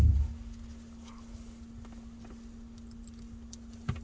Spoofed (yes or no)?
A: no